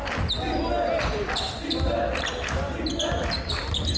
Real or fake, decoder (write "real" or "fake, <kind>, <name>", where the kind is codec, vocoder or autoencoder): real